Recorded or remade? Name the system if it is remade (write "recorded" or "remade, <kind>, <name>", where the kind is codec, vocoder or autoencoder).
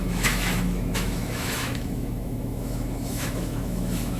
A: remade, autoencoder, DAC-VAE